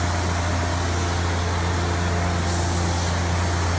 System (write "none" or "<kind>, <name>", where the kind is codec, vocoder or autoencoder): none